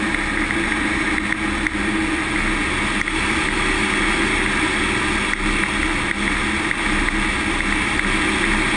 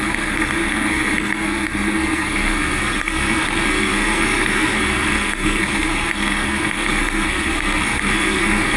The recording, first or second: first